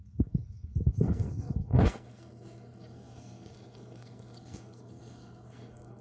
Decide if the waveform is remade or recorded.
remade